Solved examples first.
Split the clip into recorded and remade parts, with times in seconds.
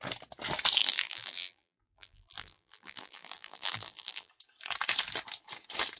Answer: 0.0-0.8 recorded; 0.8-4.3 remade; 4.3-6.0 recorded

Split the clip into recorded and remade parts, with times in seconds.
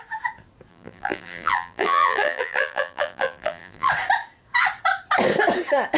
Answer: 0.0-0.7 recorded; 0.7-3.9 remade; 3.9-6.0 recorded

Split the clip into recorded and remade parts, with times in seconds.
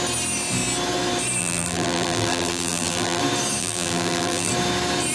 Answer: 0.0-1.4 recorded; 1.4-3.2 remade; 3.2-3.6 recorded; 3.6-4.5 remade; 4.5-5.1 recorded